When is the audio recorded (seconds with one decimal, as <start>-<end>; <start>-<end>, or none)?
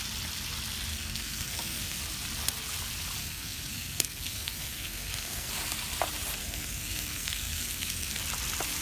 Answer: 0.0-0.9; 2.0-3.2; 5.5-6.4; 8.2-8.8